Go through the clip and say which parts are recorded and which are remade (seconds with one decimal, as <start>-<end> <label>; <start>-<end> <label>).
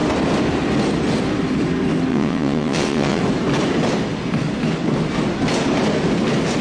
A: 0.0-2.1 recorded; 2.1-3.2 remade; 3.2-6.6 recorded